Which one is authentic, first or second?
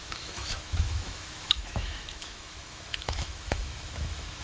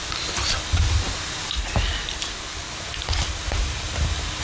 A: second